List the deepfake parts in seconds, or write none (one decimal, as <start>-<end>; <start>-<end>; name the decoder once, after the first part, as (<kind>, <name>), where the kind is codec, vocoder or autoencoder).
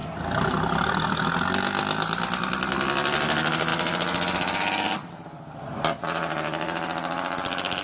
none